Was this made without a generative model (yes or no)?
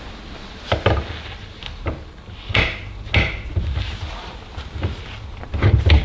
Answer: yes